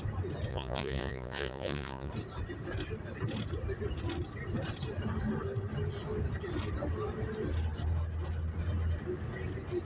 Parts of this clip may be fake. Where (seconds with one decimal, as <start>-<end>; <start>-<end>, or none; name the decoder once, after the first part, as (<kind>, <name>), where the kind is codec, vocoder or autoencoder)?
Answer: 0.5-2.1 (vocoder, Vocos)